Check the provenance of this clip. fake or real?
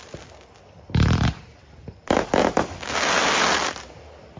real